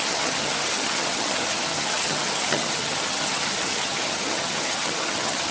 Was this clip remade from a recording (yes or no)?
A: yes